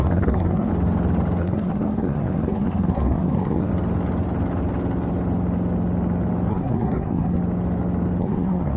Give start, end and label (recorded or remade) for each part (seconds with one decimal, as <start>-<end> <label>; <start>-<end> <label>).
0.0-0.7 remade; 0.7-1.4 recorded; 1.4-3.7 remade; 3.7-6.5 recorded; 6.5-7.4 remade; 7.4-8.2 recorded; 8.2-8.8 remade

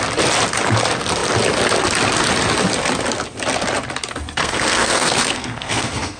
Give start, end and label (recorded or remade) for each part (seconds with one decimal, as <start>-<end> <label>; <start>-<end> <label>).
0.0-4.4 recorded; 4.4-6.2 remade

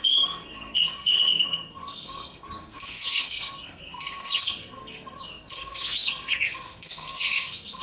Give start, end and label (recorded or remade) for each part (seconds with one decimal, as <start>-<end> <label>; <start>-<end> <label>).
0.0-7.8 remade